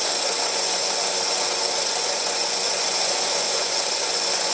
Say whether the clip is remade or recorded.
remade